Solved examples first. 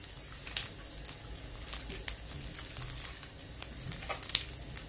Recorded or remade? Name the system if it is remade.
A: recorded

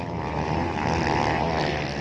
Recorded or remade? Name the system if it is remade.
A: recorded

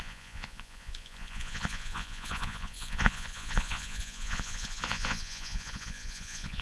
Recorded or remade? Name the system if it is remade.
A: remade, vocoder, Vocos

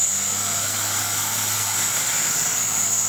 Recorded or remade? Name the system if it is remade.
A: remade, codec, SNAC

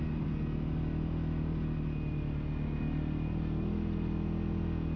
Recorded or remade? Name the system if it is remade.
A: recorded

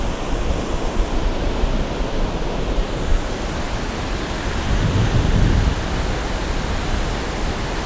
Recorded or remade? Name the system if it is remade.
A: recorded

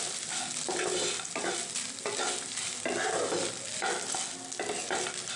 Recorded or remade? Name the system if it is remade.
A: recorded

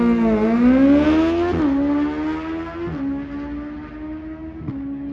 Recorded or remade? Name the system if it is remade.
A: recorded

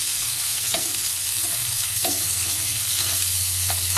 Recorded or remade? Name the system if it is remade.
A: remade, codec, SNAC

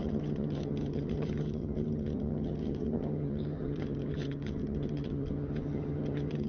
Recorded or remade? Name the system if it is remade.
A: remade, vocoder, HiFi-GAN